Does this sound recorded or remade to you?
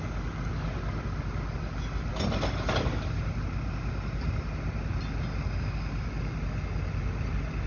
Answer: recorded